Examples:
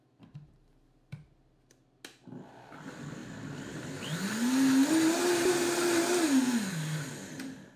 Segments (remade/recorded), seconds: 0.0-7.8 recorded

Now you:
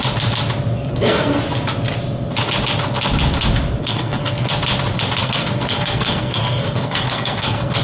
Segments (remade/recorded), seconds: 0.0-0.9 recorded; 0.9-1.4 remade; 1.4-3.8 recorded; 3.8-4.5 remade; 4.5-5.2 recorded; 5.2-7.8 remade